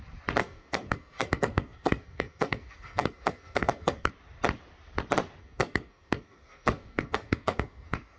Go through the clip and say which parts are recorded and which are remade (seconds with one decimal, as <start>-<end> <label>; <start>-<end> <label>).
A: 0.0-0.4 recorded; 0.4-4.1 remade; 4.1-5.4 recorded; 5.4-8.2 remade

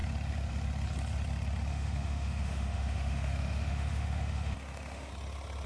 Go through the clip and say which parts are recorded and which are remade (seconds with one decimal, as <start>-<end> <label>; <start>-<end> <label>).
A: 0.0-1.7 recorded; 1.7-5.1 remade; 5.1-5.7 recorded

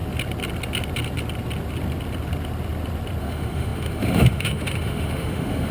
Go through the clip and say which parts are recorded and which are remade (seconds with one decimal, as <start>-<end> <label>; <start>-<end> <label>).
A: 0.0-3.2 recorded; 3.2-5.7 remade

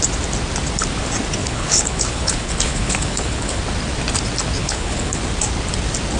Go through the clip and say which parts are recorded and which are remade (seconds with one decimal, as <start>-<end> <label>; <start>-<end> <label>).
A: 0.0-1.4 recorded; 1.4-3.6 remade; 3.6-4.6 recorded; 4.6-5.2 remade; 5.2-6.2 recorded

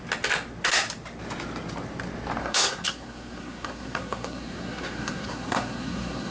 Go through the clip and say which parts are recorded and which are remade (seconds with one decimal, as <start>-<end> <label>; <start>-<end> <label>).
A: 0.0-2.4 recorded; 2.4-6.3 remade

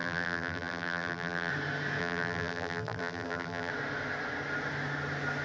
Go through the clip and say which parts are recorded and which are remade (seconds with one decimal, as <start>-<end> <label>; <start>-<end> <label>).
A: 0.0-1.5 remade; 1.5-2.0 recorded; 2.0-3.7 remade; 3.7-5.4 recorded

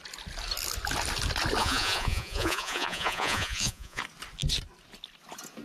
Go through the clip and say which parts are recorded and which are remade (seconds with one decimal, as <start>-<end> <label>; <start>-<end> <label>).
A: 0.0-1.6 recorded; 1.6-4.0 remade; 4.0-5.6 recorded